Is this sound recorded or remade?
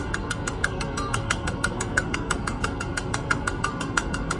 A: remade